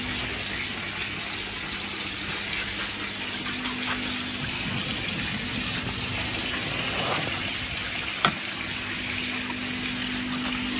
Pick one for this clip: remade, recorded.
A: recorded